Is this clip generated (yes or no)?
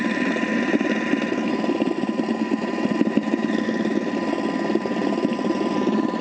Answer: no